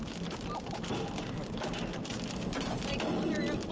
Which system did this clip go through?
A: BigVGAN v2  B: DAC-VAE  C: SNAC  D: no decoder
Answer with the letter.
D